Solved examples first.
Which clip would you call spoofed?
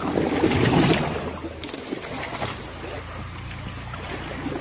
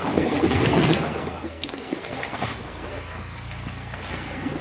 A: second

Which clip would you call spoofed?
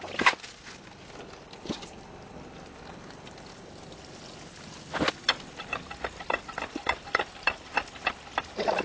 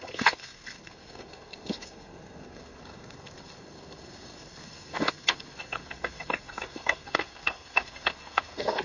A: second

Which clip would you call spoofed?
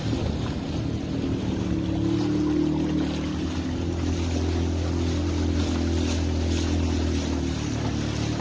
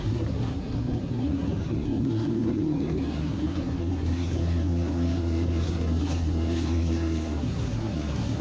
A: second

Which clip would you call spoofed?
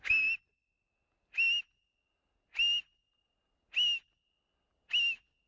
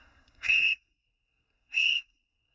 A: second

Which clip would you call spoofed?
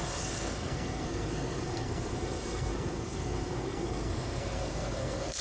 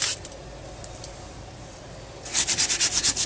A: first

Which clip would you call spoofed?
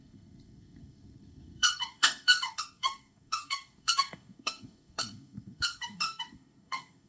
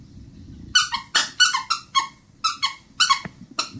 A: first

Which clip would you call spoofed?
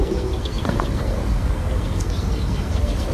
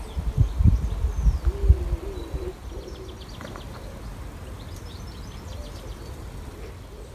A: first